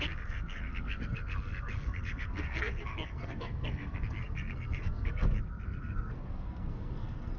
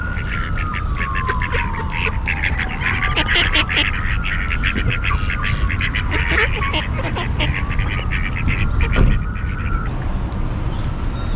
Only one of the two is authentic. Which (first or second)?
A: second